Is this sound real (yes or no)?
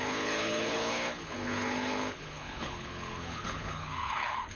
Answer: no